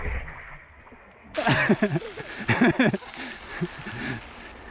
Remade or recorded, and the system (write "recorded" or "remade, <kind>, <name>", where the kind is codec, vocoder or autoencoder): recorded